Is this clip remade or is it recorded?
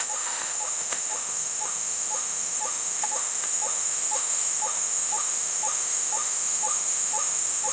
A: remade